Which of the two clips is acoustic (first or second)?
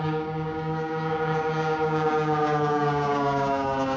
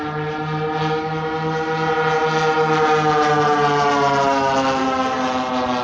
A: second